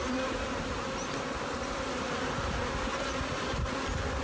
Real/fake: real